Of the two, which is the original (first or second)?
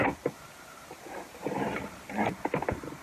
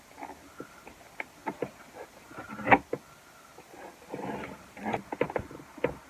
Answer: second